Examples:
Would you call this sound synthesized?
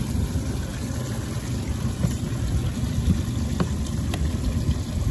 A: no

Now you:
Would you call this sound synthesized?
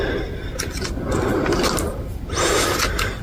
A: no